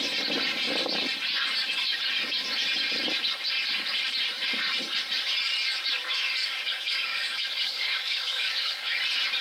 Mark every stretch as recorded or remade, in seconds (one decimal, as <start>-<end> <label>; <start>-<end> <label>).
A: 0.0-6.4 recorded; 6.4-9.0 remade; 9.0-9.4 recorded